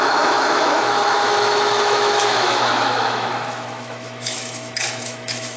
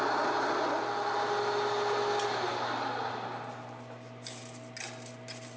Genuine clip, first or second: second